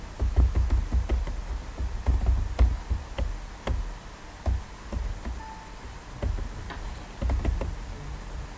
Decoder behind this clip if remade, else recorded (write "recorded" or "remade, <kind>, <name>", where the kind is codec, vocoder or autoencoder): recorded